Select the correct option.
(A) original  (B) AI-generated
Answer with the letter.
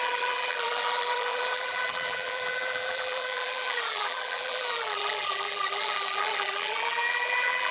B